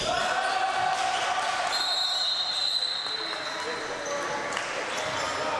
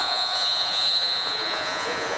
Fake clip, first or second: second